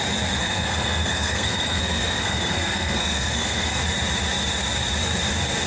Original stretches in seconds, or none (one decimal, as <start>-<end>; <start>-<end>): 0.0-0.4; 3.8-5.7